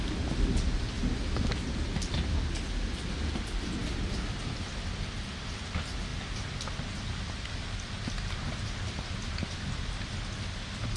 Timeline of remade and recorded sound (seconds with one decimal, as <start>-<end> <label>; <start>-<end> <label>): 0.0-11.0 recorded